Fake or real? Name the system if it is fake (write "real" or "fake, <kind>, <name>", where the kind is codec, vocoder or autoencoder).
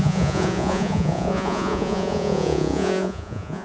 fake, vocoder, Vocos